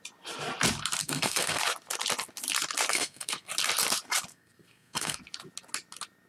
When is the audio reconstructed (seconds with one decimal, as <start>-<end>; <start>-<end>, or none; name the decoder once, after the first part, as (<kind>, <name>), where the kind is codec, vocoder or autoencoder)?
1.0-1.6 (codec, SNAC); 2.9-3.5; 4.3-5.2